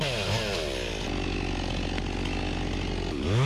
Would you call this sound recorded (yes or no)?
yes